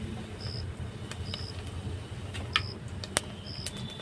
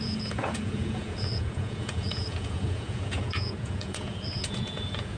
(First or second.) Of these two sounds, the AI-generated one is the second